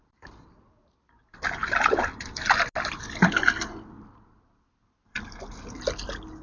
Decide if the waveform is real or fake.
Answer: real